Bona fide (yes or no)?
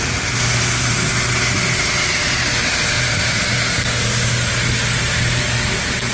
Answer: yes